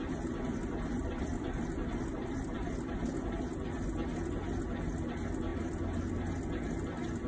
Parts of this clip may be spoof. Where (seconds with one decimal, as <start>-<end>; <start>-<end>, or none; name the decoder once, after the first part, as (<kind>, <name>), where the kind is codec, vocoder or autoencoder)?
none